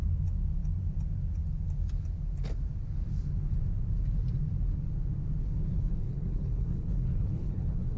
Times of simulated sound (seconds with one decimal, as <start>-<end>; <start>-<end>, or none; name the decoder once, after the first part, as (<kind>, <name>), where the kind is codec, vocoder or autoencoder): 5.4-8.0 (codec, HILCodec)